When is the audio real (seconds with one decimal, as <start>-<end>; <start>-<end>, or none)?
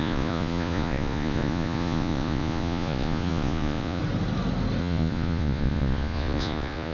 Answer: 4.0-4.8